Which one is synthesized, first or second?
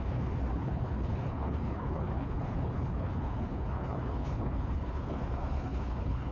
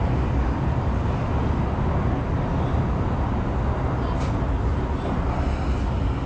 first